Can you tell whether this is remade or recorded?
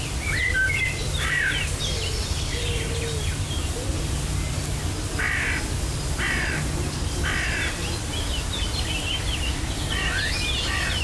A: recorded